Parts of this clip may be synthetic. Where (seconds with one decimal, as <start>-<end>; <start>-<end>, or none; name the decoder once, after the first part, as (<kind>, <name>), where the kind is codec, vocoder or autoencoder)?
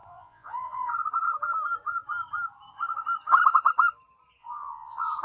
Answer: 0.0-0.9 (vocoder, Vocos); 4.4-5.2